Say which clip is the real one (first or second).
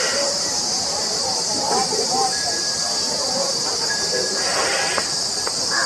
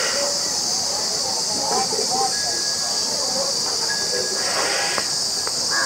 second